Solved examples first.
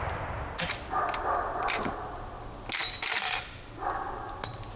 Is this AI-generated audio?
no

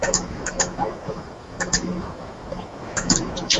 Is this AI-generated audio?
yes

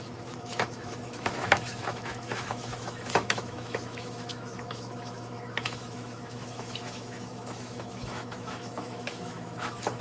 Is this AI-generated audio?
yes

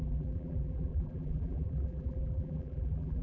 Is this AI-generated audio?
yes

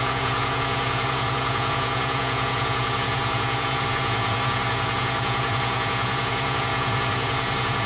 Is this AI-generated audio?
yes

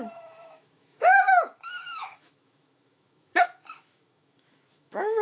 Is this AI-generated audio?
yes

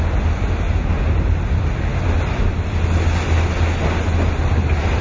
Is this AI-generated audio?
no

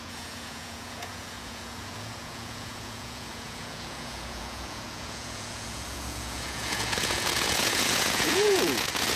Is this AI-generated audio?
yes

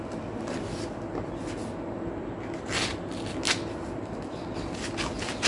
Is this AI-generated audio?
no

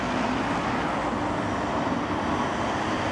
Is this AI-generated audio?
no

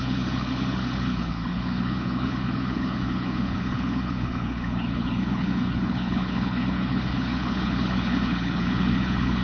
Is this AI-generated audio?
yes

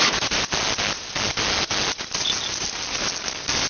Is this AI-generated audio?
no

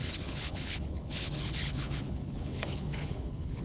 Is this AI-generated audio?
yes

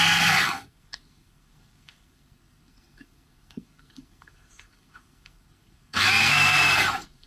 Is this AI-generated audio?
yes